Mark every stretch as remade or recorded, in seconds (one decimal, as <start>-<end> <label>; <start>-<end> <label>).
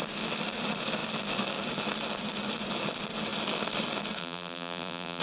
0.0-4.2 recorded; 4.2-5.2 remade